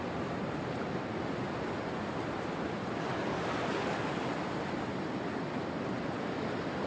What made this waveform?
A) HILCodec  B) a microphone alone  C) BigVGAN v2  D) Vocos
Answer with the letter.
B